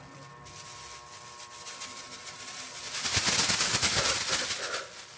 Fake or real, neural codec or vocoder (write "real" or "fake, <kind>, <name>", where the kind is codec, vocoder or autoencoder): real